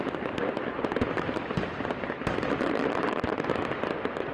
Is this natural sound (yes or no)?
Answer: no